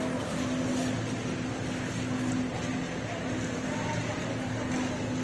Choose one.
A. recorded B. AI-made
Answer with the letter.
A